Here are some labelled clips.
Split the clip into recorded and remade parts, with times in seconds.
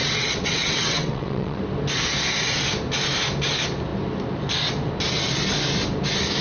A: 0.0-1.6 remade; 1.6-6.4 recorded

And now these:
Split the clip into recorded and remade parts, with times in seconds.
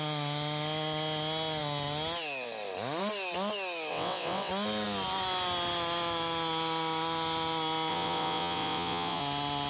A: 0.0-3.9 recorded; 3.9-4.5 remade; 4.5-7.9 recorded; 7.9-9.2 remade; 9.2-9.7 recorded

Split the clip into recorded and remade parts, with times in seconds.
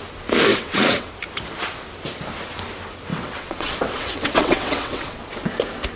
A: 0.0-0.5 recorded; 0.5-1.1 remade; 1.1-3.1 recorded; 3.1-5.2 remade; 5.2-6.0 recorded